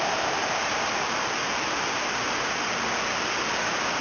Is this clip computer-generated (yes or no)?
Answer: no